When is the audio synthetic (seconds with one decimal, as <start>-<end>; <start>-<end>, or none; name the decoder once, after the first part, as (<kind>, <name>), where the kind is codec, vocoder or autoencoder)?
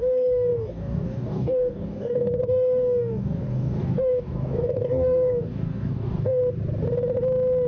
0.0-6.4 (codec, DAC)